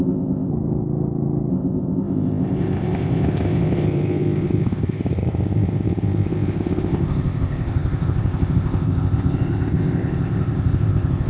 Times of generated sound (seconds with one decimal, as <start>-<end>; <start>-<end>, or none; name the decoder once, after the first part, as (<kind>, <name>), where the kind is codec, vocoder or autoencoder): 0.0-0.5 (codec, ZipCodec); 1.5-11.3